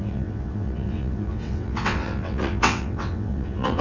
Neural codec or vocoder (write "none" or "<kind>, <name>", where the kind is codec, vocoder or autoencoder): vocoder, WaveNeXt